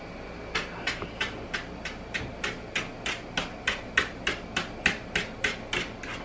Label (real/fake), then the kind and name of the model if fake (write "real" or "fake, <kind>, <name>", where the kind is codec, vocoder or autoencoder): real